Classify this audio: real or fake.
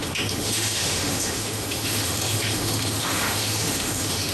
fake